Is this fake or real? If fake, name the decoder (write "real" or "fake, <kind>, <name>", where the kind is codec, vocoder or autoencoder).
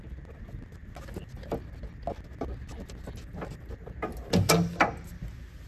real